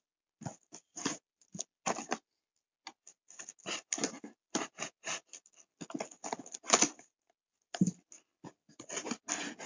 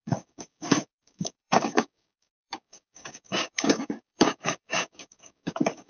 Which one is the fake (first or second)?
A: second